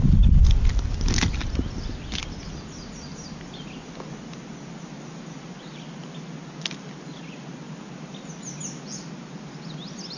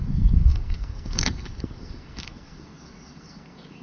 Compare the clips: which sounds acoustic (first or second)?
first